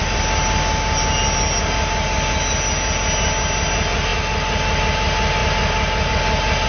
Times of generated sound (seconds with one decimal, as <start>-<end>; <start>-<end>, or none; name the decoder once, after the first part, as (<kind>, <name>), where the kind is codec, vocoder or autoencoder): none